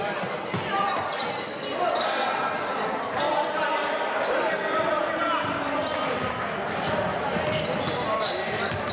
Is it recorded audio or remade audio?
recorded